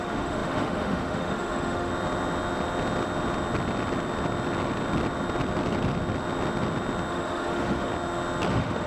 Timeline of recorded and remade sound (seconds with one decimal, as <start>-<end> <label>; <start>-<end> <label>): 0.0-1.9 remade; 1.9-7.1 recorded; 7.1-7.9 remade; 7.9-8.5 recorded; 8.5-8.9 remade